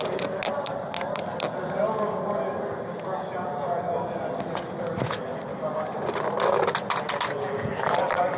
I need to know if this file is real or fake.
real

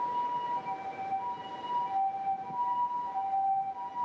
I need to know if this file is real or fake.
real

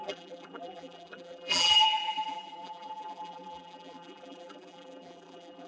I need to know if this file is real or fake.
fake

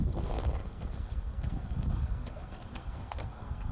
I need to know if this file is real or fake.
fake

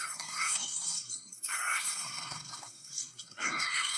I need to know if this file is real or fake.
fake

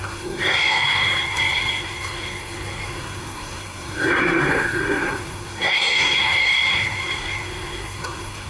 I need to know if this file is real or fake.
fake